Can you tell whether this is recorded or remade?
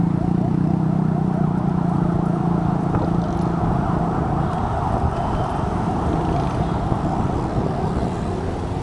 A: recorded